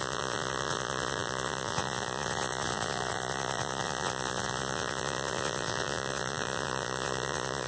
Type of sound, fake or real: fake